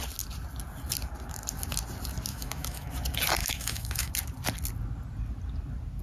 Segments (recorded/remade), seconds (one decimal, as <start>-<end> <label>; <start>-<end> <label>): 0.0-2.3 recorded; 2.3-2.9 remade; 2.9-3.4 recorded; 3.4-4.1 remade; 4.1-6.0 recorded